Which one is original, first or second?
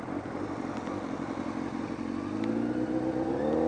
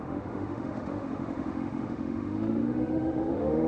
first